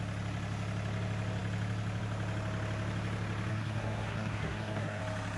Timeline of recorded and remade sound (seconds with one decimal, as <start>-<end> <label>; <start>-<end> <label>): 0.0-3.5 recorded; 3.5-5.0 remade; 5.0-5.4 recorded